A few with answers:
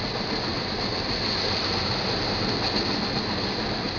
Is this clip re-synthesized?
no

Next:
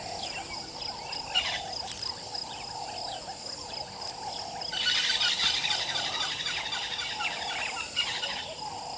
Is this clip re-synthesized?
no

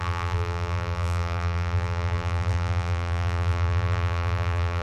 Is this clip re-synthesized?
yes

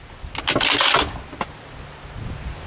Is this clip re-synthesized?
no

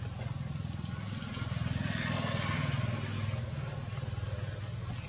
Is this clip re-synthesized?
no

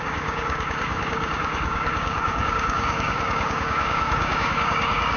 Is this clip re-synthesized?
yes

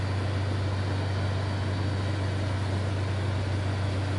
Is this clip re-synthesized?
no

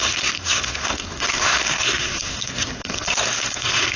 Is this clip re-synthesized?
yes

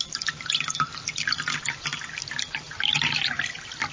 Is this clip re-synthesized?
no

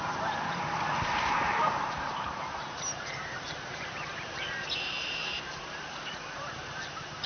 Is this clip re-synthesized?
yes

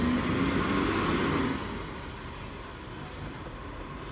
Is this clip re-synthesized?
no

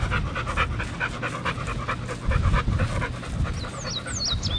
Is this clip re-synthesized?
no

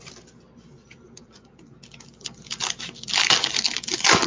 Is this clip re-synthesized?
no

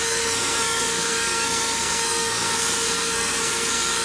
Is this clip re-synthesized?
yes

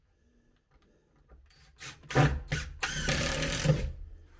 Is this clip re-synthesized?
no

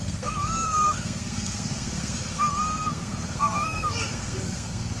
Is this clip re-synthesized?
yes